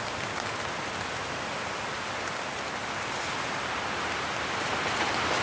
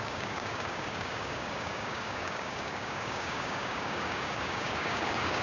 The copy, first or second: second